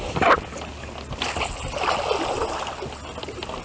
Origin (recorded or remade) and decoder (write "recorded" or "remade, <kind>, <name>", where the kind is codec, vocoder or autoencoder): recorded